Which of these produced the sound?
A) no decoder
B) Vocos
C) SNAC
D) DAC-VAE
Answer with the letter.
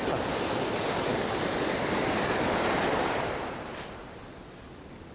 A